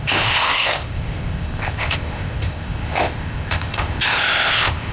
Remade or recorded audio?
remade